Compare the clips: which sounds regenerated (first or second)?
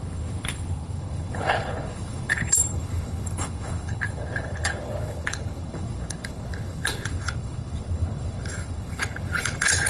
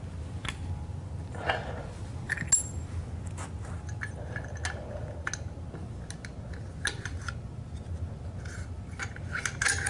first